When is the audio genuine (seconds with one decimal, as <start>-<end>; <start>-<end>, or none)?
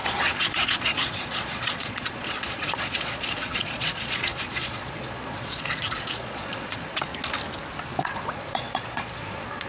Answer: 7.1-8.0